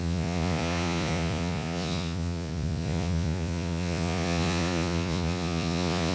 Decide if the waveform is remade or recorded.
remade